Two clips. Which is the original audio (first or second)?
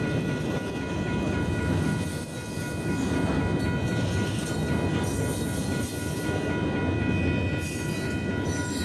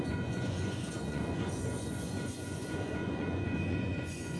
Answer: first